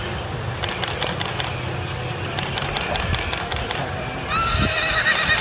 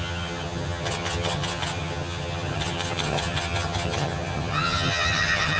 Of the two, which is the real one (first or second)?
first